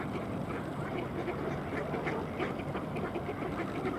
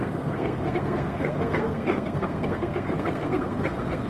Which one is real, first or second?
first